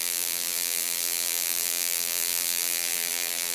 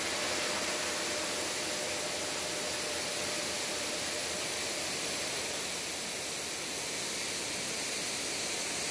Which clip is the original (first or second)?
second